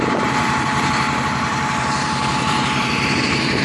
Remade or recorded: remade